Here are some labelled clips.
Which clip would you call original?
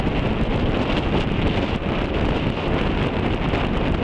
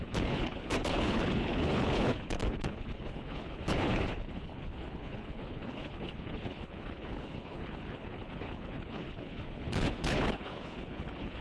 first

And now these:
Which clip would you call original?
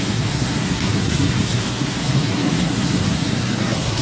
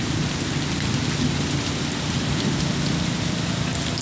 second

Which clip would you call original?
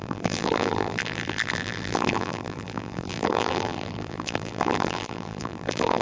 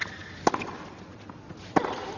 second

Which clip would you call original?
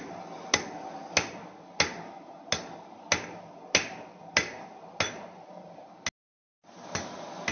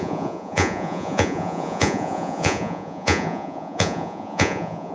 first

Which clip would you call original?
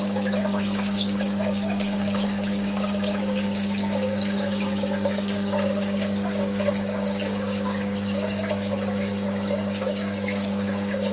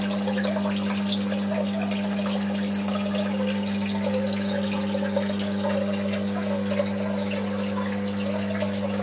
second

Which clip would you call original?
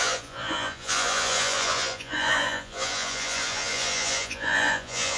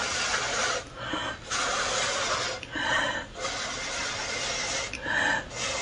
second